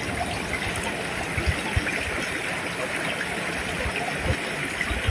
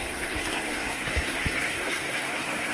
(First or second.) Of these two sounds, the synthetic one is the second